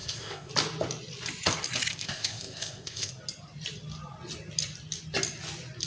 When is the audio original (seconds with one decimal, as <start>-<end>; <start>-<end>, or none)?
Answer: 0.5-1.9; 3.1-5.9